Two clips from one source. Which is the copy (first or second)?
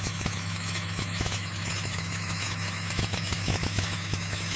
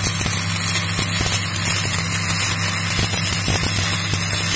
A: first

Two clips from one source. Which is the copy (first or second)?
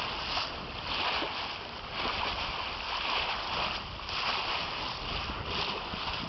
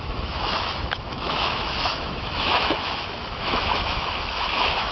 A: second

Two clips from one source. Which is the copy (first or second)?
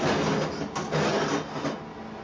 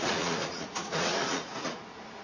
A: second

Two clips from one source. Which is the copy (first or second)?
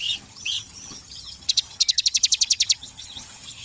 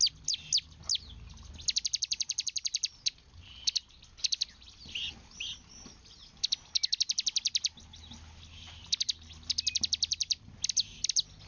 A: first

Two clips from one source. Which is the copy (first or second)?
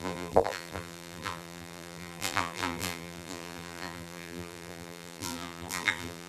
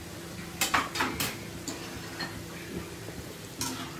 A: first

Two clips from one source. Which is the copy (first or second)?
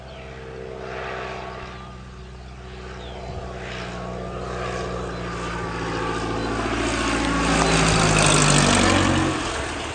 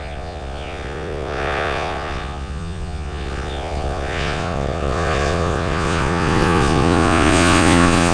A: second